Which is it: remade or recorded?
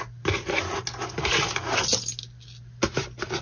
recorded